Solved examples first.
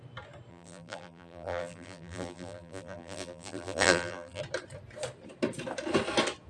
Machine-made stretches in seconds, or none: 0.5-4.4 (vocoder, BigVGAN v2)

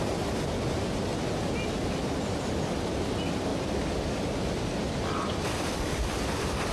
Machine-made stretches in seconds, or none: 0.0-1.1 (vocoder, BigVGAN v2); 3.0-3.5; 5.3-6.7

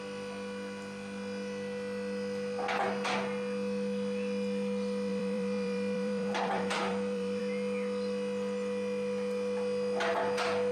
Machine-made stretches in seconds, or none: 5.1-7.4 (vocoder, BigVGAN v2)

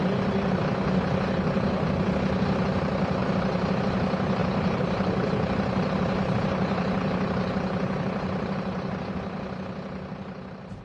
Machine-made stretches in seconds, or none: 3.2-3.7 (vocoder, BigVGAN v2); 4.4-9.1

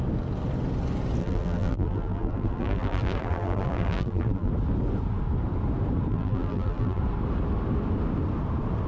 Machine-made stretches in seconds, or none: 1.2-4.5 (vocoder, BigVGAN v2); 6.1-7.0

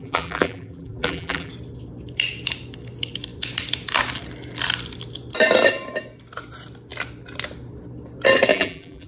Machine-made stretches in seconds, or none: 0.0-1.5 (vocoder, BigVGAN v2); 8.5-9.1

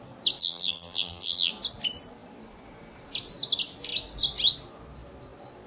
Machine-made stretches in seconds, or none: 0.4-1.5 (vocoder, BigVGAN v2)